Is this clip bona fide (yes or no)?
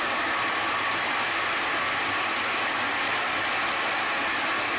yes